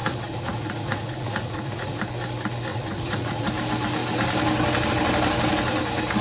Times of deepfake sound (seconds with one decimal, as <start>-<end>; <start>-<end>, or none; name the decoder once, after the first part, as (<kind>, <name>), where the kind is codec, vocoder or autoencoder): 0.0-2.0 (vocoder, Vocos); 2.7-3.5